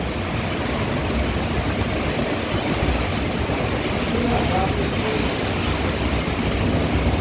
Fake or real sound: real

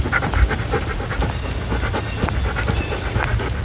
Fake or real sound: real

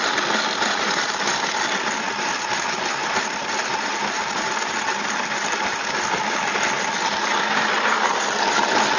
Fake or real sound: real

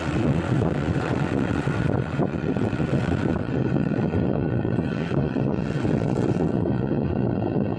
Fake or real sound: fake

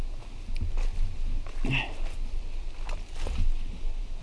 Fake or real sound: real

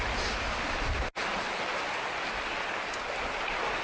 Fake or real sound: real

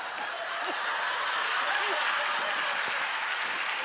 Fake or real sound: real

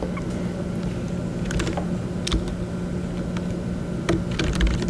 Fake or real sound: real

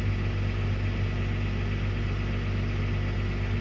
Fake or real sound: real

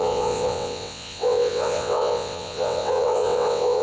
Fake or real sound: fake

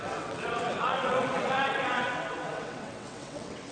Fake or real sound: fake